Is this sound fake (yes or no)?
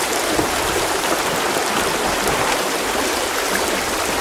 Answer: yes